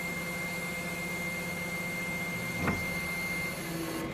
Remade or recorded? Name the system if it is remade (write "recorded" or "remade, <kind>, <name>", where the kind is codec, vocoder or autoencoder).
recorded